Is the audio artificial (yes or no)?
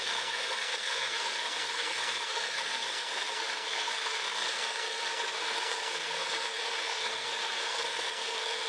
yes